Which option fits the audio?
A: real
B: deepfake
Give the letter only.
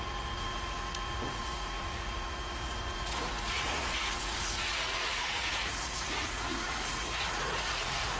B